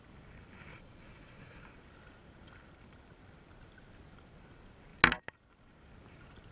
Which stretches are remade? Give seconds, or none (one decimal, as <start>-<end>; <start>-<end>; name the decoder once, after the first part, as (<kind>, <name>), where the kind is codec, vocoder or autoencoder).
0.7-1.6 (vocoder, Vocos)